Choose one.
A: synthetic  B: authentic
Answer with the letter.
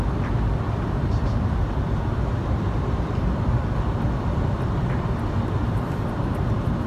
A